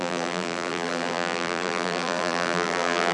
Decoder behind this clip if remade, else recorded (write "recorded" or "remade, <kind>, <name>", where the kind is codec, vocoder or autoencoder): remade, vocoder, BigVGAN v2